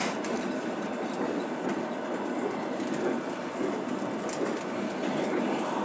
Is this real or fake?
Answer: real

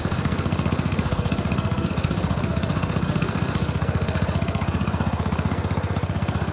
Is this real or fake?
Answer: fake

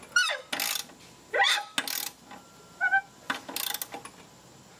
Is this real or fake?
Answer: real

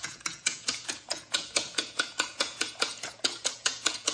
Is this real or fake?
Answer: fake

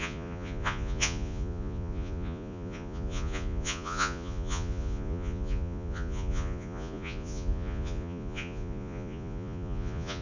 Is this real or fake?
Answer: fake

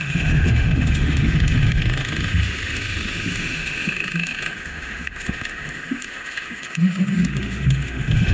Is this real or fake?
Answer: fake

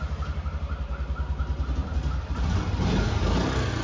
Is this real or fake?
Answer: real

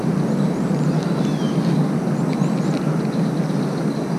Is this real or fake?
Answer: real